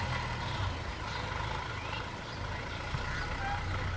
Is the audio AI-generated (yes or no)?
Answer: no